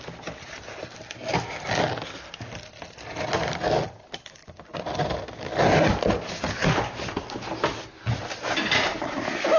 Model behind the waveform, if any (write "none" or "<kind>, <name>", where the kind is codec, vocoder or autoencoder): none